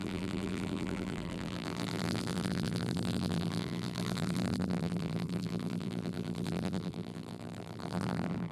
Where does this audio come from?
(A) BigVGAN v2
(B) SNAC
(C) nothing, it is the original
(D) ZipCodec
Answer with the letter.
A